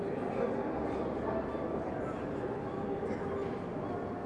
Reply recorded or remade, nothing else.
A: recorded